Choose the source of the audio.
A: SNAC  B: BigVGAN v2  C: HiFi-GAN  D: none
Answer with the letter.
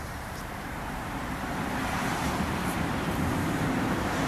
B